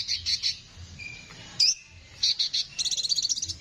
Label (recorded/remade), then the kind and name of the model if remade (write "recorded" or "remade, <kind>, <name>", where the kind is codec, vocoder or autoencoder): recorded